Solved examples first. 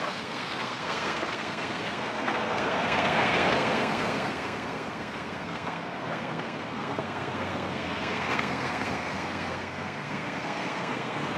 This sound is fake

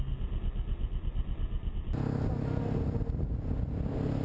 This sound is real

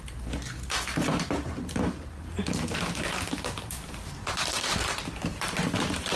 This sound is fake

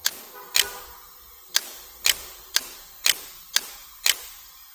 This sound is real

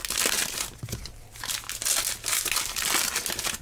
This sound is real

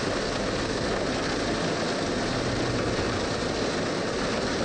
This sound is real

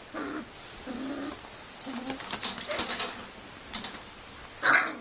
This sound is real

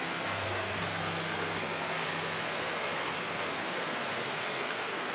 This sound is fake